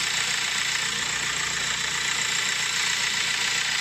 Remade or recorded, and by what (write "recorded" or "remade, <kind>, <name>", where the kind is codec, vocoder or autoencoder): recorded